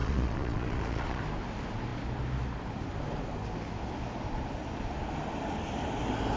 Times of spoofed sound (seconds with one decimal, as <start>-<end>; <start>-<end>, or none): 0.0-1.2